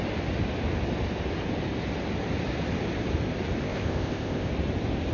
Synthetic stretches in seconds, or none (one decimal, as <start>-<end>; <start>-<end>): 3.6-4.5